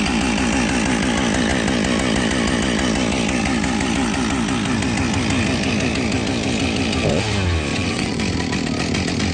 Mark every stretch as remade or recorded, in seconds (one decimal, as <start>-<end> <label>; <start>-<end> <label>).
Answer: 0.0-7.7 recorded; 7.7-8.2 remade; 8.2-9.3 recorded